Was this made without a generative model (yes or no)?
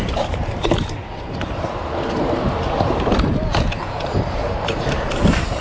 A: no